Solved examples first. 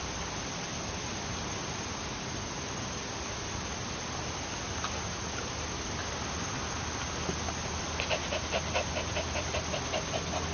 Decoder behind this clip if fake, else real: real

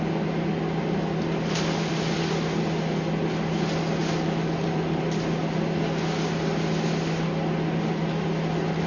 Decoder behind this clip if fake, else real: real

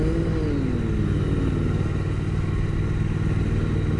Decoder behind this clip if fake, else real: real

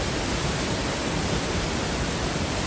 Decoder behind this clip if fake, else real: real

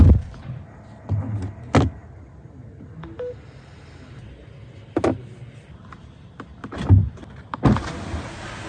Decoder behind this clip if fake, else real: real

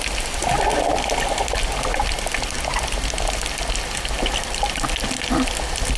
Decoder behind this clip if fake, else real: real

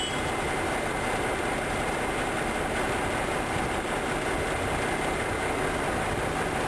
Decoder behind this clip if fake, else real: real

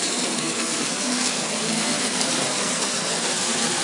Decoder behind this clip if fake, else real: fake, codec, SNAC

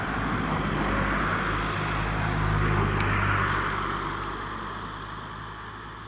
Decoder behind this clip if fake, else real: real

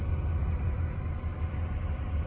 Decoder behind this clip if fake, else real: real